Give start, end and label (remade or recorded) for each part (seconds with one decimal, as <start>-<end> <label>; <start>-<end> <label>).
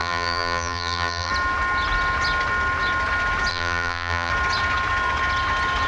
0.0-1.3 remade; 1.3-3.5 recorded; 3.5-4.3 remade; 4.3-5.9 recorded